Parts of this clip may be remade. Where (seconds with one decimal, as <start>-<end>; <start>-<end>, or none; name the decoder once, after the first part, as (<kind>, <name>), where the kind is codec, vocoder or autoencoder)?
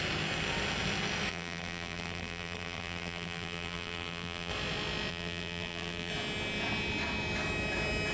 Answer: 1.3-4.5 (vocoder, BigVGAN v2); 5.1-6.1